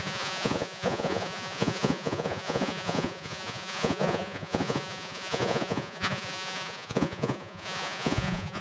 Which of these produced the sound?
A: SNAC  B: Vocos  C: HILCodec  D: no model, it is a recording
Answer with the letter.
B